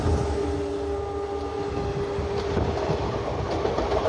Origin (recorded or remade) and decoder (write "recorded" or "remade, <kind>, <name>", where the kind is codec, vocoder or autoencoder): recorded